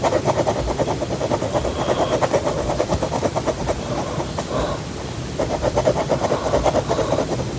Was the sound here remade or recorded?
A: remade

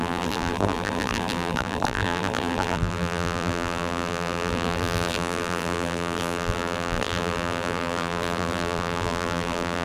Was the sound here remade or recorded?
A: remade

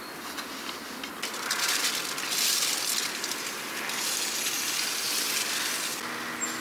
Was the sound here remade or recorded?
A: recorded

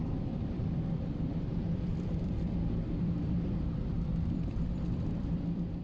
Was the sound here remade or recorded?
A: remade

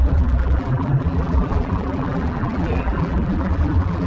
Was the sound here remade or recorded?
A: remade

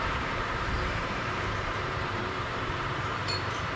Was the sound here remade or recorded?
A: remade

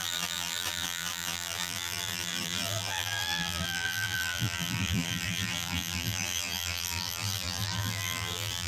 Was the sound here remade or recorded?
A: remade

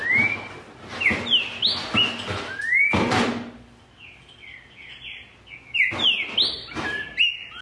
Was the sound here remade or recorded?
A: recorded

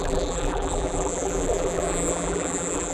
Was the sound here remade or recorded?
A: remade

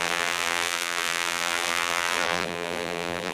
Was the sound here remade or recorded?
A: remade